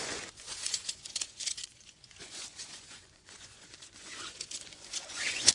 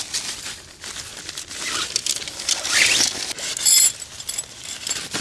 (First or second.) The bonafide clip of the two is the second